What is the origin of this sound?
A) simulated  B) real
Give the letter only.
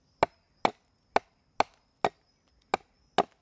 B